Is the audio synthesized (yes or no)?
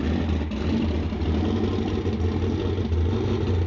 no